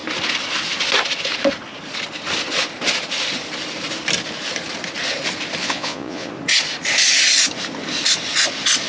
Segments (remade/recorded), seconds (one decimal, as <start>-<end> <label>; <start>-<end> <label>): 0.0-5.6 recorded; 5.6-6.3 remade; 6.3-8.9 recorded